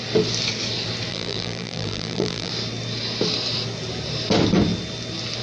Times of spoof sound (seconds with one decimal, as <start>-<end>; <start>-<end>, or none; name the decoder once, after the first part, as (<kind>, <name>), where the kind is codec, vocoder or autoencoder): 1.1-2.5 (vocoder, BigVGAN v2)